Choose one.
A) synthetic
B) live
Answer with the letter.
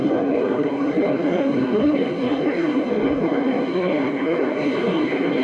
A